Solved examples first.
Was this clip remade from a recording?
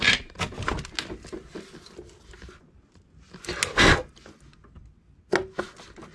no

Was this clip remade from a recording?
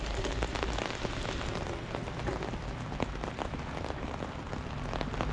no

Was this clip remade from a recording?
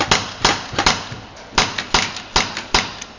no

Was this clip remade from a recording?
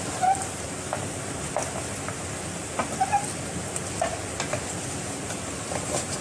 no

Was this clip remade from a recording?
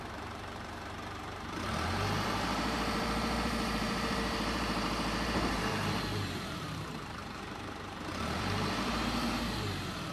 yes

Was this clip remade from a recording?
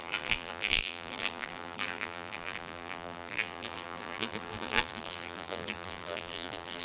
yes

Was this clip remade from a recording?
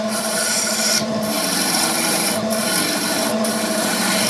yes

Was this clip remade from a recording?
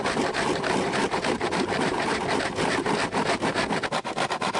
no